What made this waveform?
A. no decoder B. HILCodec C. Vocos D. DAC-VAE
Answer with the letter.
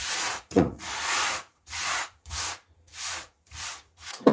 C